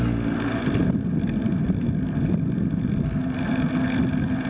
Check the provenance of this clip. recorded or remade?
recorded